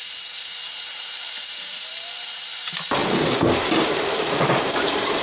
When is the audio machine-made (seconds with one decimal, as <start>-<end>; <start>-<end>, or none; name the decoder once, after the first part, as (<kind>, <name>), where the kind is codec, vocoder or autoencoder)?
0.0-5.2 (vocoder, BigVGAN v2)